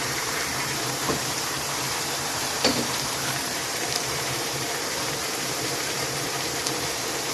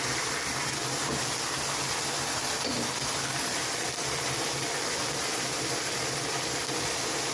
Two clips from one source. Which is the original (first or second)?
second